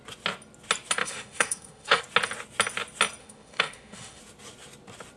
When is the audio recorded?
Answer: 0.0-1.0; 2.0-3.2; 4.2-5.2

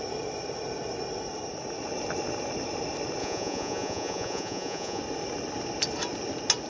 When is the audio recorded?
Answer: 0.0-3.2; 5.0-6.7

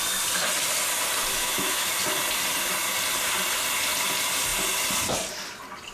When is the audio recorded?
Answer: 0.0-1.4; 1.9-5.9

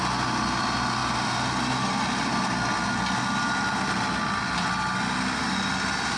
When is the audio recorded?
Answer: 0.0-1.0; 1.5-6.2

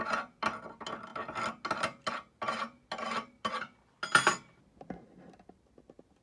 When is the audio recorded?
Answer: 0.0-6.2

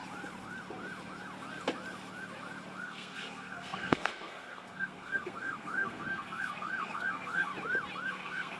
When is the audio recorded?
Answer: 0.0-2.8; 7.5-8.1